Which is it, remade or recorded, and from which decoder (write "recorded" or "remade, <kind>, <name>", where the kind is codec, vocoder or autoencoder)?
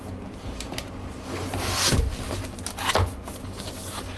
recorded